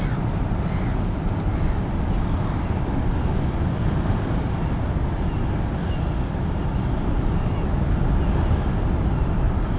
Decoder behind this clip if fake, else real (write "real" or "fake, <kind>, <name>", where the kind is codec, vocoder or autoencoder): real